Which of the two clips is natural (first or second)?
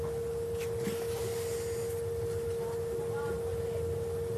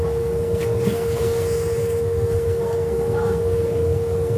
first